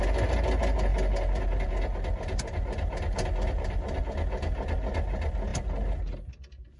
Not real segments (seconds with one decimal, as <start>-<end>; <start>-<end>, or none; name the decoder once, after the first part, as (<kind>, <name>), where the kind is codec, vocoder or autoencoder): none